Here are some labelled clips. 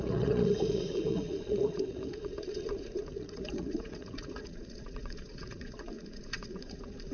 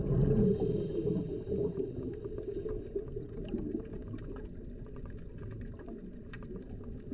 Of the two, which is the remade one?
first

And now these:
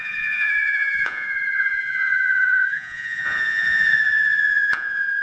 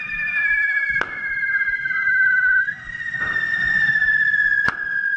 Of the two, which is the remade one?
first